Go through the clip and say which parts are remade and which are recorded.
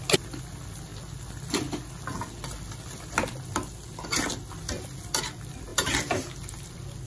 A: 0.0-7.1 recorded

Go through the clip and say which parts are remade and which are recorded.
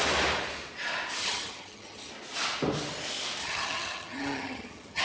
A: 0.0-1.2 recorded; 1.2-2.1 remade; 2.1-3.4 recorded; 3.4-5.0 remade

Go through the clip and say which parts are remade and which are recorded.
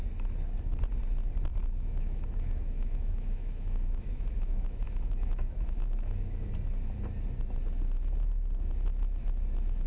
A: 0.0-1.6 recorded; 1.6-6.5 remade; 6.5-9.9 recorded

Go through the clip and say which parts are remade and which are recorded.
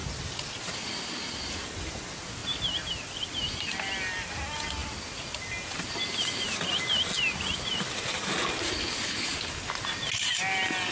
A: 0.0-10.9 recorded